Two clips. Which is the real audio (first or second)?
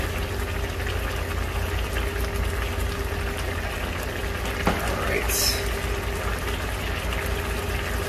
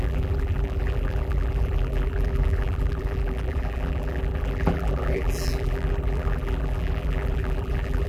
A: first